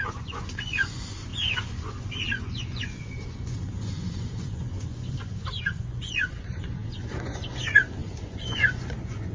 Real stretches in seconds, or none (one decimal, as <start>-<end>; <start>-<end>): none